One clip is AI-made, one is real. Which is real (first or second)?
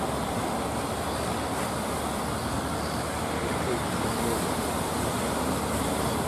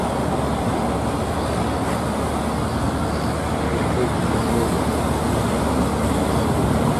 second